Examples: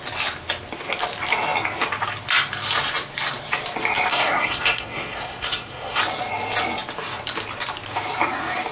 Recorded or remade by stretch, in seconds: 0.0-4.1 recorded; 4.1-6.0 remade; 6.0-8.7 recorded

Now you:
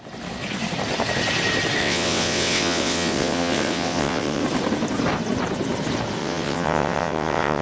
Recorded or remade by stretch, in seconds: 0.0-1.8 recorded; 1.8-4.4 remade; 4.4-6.2 recorded; 6.2-7.6 remade

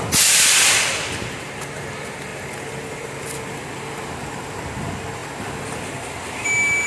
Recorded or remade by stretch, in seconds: 0.0-6.9 recorded

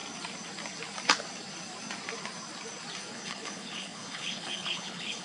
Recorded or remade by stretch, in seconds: 0.0-3.1 recorded; 3.1-5.2 remade

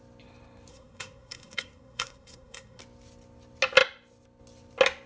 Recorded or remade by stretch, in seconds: 0.0-0.7 recorded; 0.7-2.8 remade; 2.8-5.1 recorded

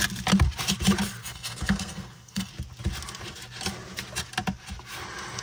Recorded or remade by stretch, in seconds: 0.0-1.2 recorded; 1.2-2.5 remade; 2.5-5.4 recorded